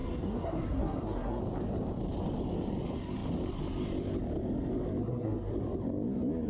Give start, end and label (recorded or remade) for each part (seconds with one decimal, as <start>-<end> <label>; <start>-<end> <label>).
0.0-1.4 remade; 1.4-5.0 recorded; 5.0-5.5 remade; 5.5-6.5 recorded